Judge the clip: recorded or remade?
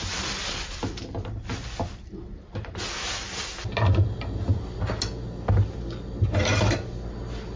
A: recorded